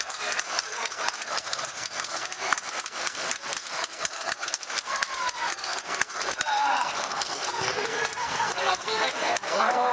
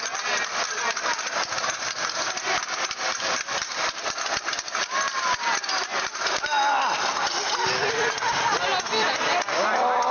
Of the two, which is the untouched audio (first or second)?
second